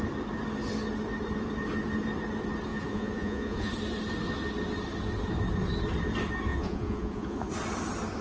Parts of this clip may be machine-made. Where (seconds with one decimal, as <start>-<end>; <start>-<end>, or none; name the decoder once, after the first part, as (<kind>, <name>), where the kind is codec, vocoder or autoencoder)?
2.7-3.7 (vocoder, Vocos); 6.5-7.5